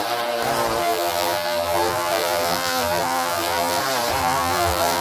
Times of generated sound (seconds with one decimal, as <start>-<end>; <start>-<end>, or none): 0.8-3.8; 4.2-5.0